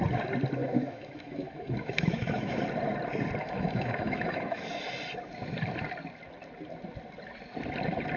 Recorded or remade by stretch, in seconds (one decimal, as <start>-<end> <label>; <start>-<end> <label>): 0.0-0.6 recorded; 0.6-2.6 remade; 2.6-3.4 recorded; 3.4-4.7 remade; 4.7-8.2 recorded